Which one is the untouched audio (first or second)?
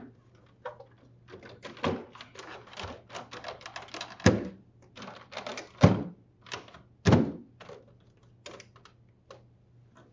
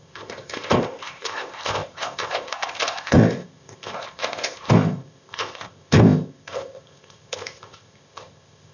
first